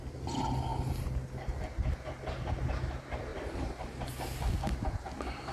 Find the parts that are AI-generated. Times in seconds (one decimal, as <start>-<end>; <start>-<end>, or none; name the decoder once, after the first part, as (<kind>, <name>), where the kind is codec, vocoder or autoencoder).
3.3-4.1 (vocoder, BigVGAN v2)